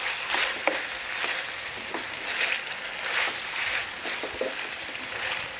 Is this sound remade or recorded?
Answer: recorded